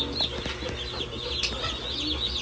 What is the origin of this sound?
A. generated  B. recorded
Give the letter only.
B